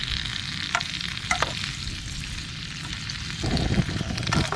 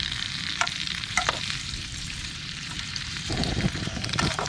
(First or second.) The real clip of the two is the first